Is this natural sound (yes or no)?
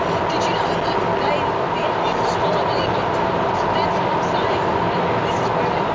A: yes